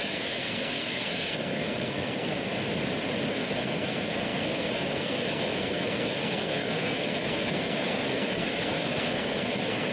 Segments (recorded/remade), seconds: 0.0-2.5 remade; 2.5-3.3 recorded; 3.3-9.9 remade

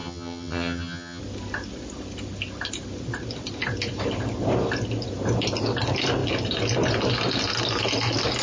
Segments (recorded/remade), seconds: 0.0-1.2 remade; 1.2-8.4 recorded

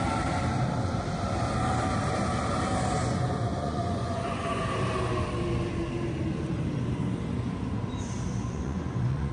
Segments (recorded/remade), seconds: 0.0-3.0 recorded; 3.0-4.6 remade; 4.6-8.4 recorded; 8.4-9.3 remade

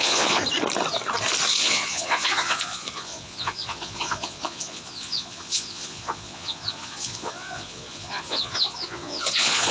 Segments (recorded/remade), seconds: 0.0-0.4 remade; 0.4-1.5 recorded; 1.5-9.7 remade

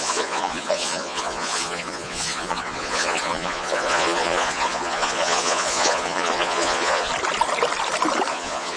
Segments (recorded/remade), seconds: 0.0-7.1 remade; 7.1-8.3 recorded; 8.3-8.8 remade

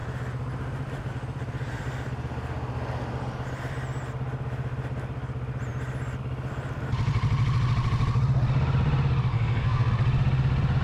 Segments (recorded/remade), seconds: 0.0-9.3 recorded; 9.3-9.9 remade; 9.9-10.8 recorded